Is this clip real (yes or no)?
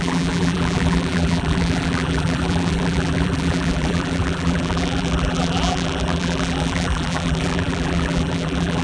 no